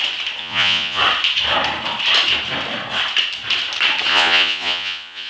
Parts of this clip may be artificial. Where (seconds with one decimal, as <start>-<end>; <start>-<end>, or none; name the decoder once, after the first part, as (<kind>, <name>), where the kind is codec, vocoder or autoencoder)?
0.4-1.0 (vocoder, Vocos); 4.1-5.3